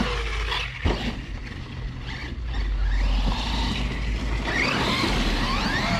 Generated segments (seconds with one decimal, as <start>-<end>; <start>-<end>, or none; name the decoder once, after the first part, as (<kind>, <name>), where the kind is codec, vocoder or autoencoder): none